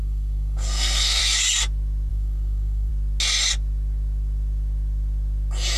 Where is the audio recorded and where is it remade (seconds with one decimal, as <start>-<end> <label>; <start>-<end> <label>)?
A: 0.0-1.2 remade; 1.2-2.1 recorded; 2.1-2.9 remade; 2.9-5.8 recorded